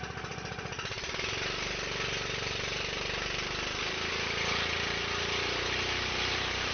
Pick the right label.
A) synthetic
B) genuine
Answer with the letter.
A